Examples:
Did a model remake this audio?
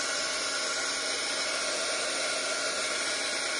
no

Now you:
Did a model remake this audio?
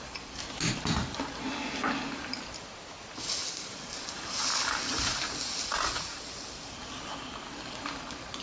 no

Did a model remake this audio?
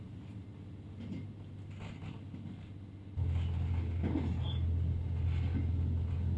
no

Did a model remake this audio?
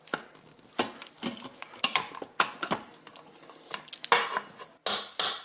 no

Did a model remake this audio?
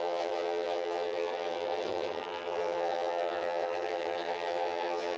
yes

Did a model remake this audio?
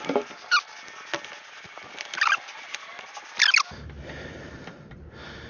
yes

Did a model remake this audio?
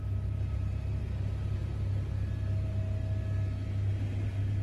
no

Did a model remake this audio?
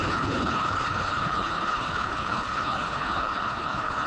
yes